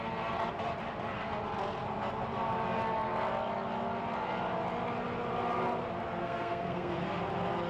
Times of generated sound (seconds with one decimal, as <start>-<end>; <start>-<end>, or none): 6.2-6.9